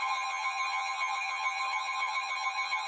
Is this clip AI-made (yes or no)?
yes